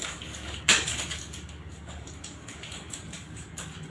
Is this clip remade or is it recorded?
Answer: remade